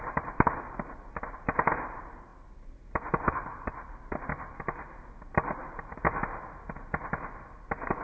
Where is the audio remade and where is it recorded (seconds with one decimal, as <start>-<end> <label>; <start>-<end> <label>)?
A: 0.0-8.0 recorded

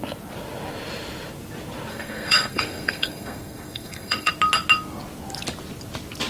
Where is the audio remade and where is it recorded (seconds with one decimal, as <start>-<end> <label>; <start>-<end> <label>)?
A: 0.0-1.9 recorded; 1.9-4.3 remade; 4.3-6.3 recorded

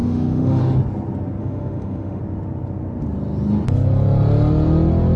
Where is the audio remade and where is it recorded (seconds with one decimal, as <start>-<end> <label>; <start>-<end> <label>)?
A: 0.0-0.6 remade; 0.6-1.4 recorded; 1.4-2.2 remade; 2.2-5.2 recorded

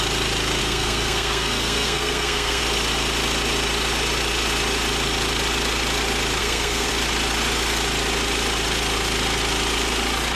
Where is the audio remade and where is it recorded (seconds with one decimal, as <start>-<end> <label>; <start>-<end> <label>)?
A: 0.0-0.6 recorded; 0.6-2.6 remade; 2.6-6.4 recorded; 6.4-6.9 remade; 6.9-10.4 recorded

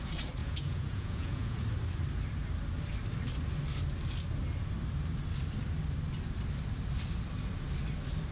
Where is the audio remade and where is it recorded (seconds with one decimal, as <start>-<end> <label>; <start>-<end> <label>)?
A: 0.0-0.4 recorded; 0.4-1.6 remade; 1.6-8.3 recorded